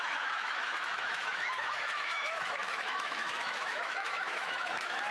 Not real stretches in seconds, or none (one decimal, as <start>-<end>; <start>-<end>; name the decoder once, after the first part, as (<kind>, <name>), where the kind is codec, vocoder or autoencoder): 0.0-5.1 (autoencoder, DAC-VAE)